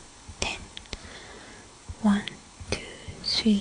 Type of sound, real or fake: fake